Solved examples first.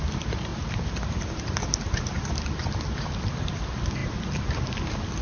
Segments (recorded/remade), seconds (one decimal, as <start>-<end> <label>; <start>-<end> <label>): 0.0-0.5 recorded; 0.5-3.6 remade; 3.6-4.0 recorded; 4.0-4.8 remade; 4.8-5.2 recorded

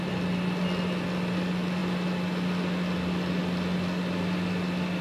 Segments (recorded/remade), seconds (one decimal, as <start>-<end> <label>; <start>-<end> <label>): 0.0-5.0 recorded

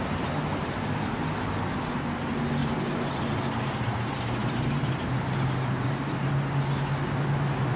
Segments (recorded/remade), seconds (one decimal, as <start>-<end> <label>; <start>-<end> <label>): 0.0-2.6 recorded; 2.6-6.3 remade; 6.3-7.8 recorded

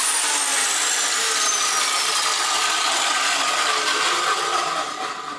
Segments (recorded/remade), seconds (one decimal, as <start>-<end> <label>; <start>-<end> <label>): 0.0-5.4 recorded